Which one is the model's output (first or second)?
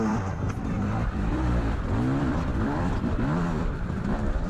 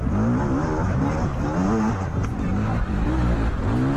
first